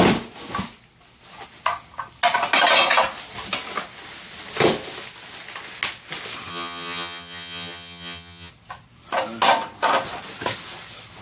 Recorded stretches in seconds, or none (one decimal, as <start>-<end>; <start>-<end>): 0.0-6.5; 8.5-11.2

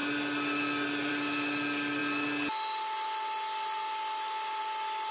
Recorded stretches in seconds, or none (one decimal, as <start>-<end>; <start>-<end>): 0.0-5.1

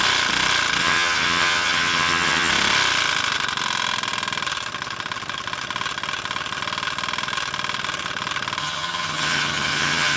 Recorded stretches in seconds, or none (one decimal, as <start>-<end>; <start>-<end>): 0.0-0.8; 2.5-8.6

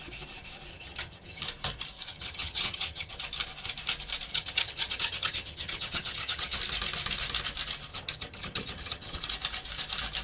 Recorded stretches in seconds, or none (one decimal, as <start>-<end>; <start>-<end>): 0.0-0.7; 1.4-2.1; 3.1-4.3; 6.6-7.9; 9.2-10.2

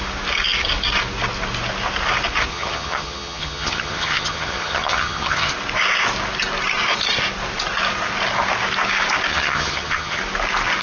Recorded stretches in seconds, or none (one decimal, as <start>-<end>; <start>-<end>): 0.0-2.5; 5.5-9.3; 10.2-10.8

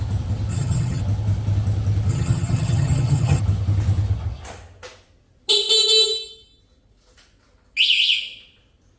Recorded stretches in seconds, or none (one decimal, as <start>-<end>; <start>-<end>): 0.0-0.5; 1.0-2.1; 3.4-9.0